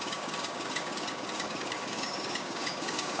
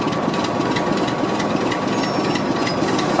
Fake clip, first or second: first